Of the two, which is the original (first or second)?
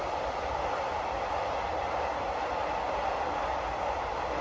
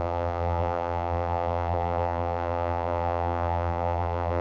first